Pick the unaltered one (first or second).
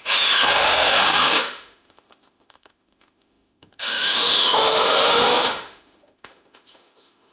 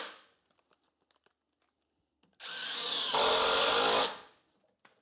second